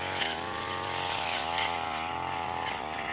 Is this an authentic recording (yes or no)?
yes